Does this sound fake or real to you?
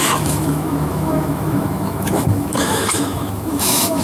fake